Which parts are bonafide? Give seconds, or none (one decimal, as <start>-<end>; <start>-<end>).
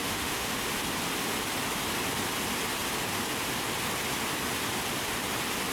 0.5-5.7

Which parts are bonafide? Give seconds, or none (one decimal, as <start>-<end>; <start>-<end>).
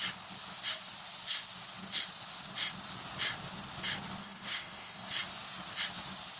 0.0-4.2; 5.1-6.4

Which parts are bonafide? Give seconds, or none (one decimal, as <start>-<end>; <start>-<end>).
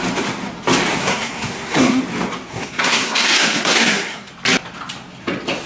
0.0-1.0; 2.0-2.5; 4.3-5.7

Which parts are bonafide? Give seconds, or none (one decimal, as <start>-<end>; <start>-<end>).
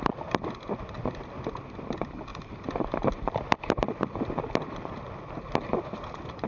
0.0-6.5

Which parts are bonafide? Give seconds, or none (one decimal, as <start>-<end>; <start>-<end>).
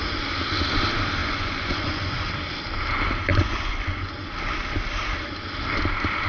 0.0-1.2; 2.3-3.3; 4.1-6.3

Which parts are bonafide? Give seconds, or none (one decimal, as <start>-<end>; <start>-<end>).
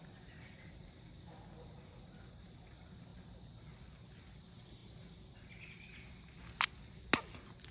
0.0-7.7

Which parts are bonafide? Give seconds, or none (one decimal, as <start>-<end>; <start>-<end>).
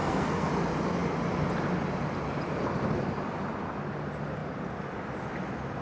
0.5-5.8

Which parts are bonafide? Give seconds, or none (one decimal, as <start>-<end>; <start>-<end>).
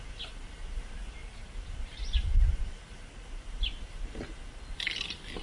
0.0-1.2; 4.0-5.4